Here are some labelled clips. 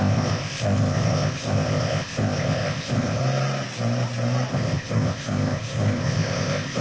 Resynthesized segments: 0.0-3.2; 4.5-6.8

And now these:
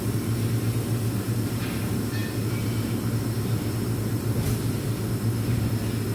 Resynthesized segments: none

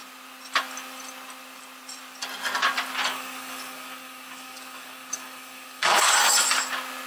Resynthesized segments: 3.1-6.1

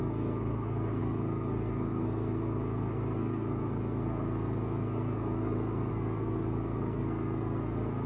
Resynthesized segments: 0.0-8.1

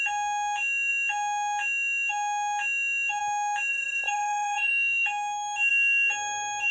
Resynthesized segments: 3.7-4.7

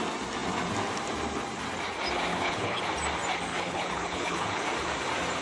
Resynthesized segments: 2.3-2.8; 3.5-4.6

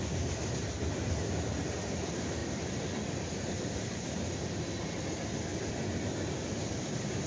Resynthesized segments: none

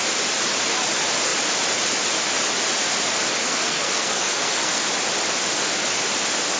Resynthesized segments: 3.4-4.9